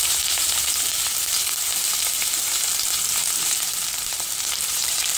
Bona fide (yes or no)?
no